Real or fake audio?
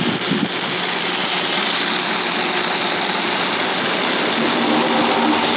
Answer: real